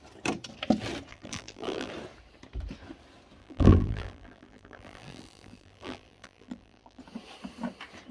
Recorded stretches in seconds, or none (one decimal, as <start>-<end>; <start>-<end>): 0.0-1.1; 1.9-3.4; 7.0-8.1